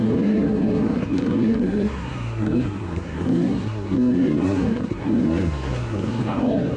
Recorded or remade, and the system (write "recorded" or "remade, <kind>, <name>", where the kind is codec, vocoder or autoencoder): remade, codec, SNAC